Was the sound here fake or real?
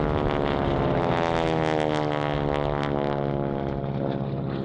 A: real